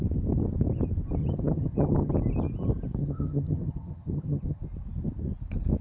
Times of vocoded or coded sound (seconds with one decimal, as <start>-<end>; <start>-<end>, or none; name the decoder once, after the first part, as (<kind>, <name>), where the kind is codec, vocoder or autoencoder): 1.2-2.1 (vocoder, HiFi-GAN); 3.0-4.6